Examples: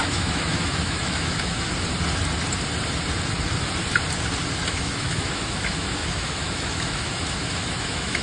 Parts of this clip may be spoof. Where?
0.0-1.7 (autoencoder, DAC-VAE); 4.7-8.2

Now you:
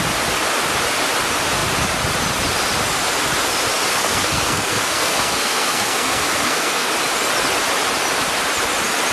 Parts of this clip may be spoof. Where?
3.9-6.9 (codec, SNAC)